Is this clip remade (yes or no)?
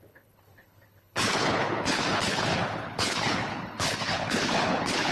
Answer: yes